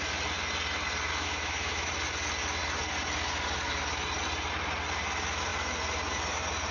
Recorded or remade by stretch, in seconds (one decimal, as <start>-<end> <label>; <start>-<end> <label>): 0.0-1.1 recorded; 1.1-1.9 remade; 1.9-6.7 recorded